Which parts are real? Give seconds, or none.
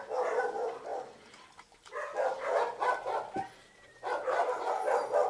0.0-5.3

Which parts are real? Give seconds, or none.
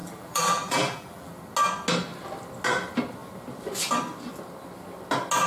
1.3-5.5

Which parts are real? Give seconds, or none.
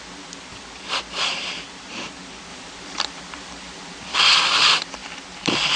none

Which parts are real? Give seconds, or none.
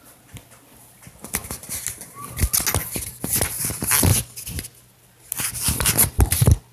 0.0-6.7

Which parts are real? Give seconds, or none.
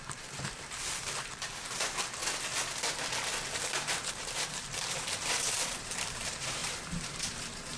2.2-3.6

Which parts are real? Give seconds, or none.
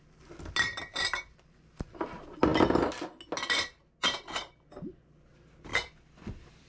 0.0-0.7; 2.1-5.7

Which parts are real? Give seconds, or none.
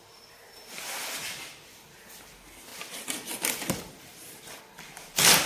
0.0-1.0; 2.3-2.7; 4.6-5.5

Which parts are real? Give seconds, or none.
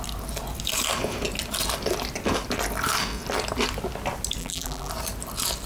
0.0-4.4; 4.9-5.7